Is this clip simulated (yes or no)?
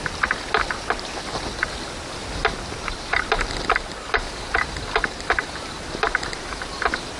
no